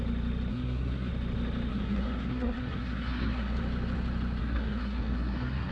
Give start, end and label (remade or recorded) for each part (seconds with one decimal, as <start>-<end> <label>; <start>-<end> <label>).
0.0-0.5 recorded; 0.5-1.1 remade; 1.1-1.7 recorded; 1.7-3.6 remade; 3.6-4.4 recorded; 4.4-5.7 remade